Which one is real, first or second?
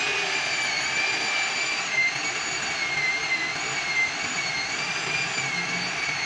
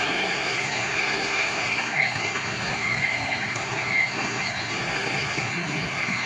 first